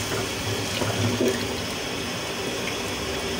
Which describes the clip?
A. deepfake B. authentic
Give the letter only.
B